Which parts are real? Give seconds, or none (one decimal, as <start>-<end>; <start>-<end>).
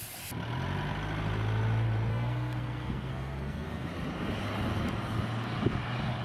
0.0-2.1; 3.9-6.2